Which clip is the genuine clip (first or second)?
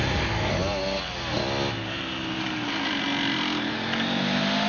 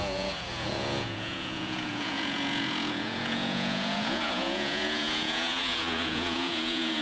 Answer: first